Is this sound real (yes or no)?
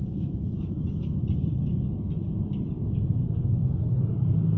yes